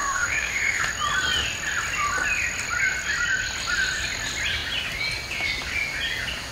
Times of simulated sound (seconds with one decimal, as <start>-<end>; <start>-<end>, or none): 0.0-0.8